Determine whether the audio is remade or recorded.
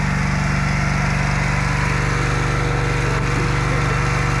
recorded